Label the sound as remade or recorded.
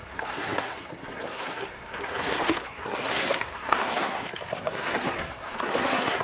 remade